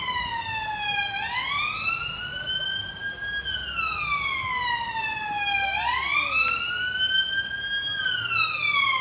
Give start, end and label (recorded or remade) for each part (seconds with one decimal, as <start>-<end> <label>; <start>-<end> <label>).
0.0-9.0 recorded

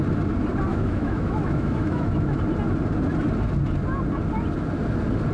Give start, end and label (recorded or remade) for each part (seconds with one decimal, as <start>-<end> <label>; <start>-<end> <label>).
0.0-0.7 recorded; 0.7-2.4 remade; 2.4-5.3 recorded

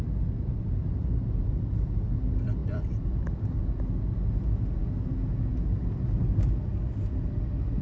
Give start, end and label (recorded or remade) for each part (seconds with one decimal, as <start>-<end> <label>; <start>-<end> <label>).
0.0-2.6 recorded; 2.6-3.6 remade; 3.6-7.8 recorded

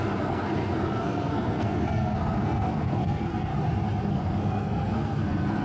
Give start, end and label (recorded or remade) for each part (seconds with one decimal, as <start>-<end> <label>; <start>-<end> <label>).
0.0-3.5 remade; 3.5-4.0 recorded; 4.0-5.6 remade

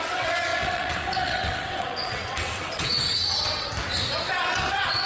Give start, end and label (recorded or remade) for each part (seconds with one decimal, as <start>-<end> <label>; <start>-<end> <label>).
0.0-3.7 remade; 3.7-4.3 recorded; 4.3-5.1 remade